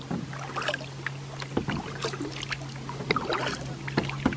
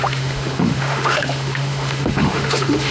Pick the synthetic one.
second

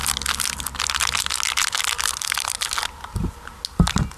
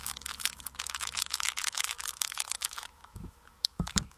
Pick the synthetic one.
second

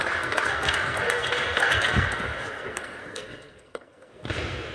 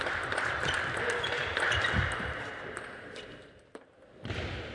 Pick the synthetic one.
first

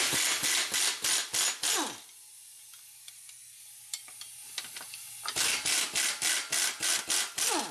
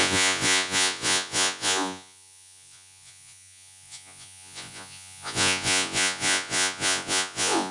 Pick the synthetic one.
second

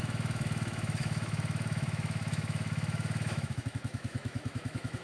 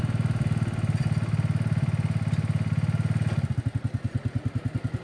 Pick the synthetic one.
first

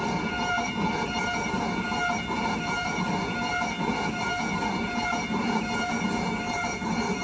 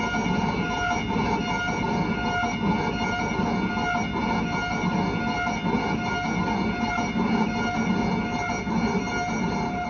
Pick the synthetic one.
first